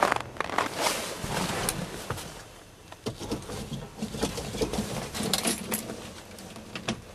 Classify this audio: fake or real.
real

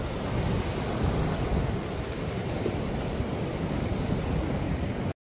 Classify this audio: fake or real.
real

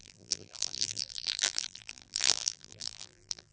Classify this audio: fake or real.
fake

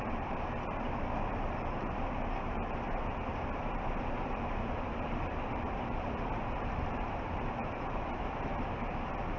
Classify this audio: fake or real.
fake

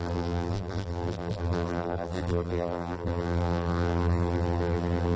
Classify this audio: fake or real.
fake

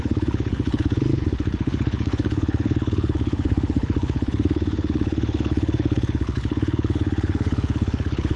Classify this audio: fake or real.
fake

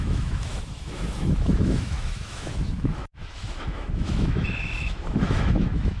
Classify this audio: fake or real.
fake